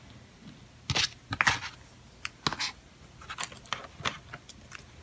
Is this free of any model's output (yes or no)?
yes